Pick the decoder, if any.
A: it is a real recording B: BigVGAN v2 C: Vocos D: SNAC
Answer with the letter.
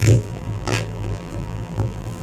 B